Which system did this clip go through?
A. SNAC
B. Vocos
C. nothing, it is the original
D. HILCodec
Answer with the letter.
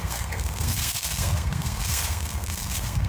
A